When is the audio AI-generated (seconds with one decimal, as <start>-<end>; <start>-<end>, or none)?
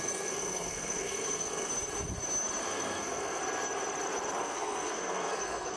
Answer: 0.0-1.7; 2.6-3.4; 4.4-5.8